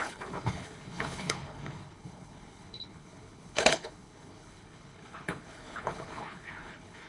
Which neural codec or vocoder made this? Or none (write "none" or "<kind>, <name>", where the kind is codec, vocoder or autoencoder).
codec, HILCodec